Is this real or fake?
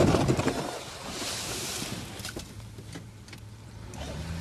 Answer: real